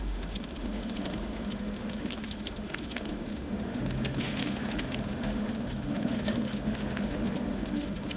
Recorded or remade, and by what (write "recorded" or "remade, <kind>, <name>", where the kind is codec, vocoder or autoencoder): remade, autoencoder, DAC-VAE